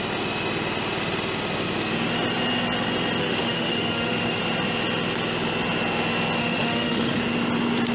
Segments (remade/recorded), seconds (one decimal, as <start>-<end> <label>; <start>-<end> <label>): 0.0-3.2 recorded; 3.2-4.4 remade; 4.4-6.4 recorded; 6.4-7.2 remade; 7.2-7.9 recorded